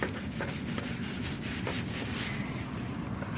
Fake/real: real